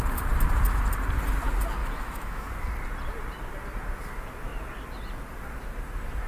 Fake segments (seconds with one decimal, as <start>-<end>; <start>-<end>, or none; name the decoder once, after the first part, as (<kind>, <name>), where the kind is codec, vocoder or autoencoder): 1.8-2.5 (autoencoder, DAC-VAE)